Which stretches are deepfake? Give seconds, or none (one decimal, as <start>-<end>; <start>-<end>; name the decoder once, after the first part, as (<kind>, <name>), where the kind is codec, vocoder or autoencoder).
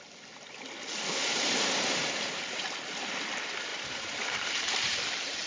1.2-2.7 (vocoder, BigVGAN v2); 3.7-5.5